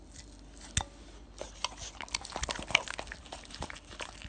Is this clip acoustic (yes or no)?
yes